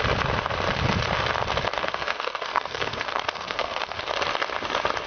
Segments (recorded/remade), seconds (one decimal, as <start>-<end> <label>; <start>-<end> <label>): 0.0-1.8 recorded; 1.8-4.0 remade; 4.0-5.1 recorded